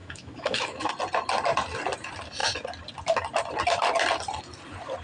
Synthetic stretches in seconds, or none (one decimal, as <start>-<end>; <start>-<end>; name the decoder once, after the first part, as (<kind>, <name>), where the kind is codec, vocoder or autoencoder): 0.0-0.9 (autoencoder, DAC-VAE)